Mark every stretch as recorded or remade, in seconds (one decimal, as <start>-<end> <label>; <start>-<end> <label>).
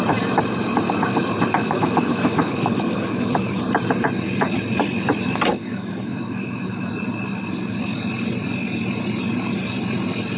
0.0-1.6 recorded; 1.6-3.6 remade; 3.6-5.6 recorded; 5.6-6.9 remade; 6.9-10.4 recorded